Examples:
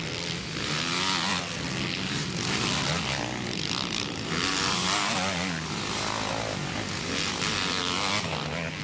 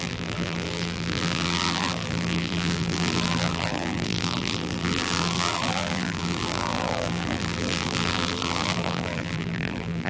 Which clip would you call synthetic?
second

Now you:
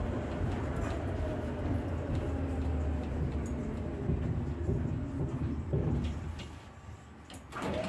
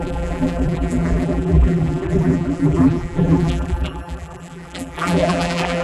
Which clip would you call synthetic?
second